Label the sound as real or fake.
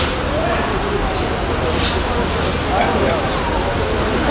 real